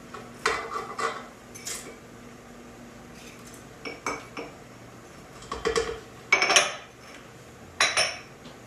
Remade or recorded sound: recorded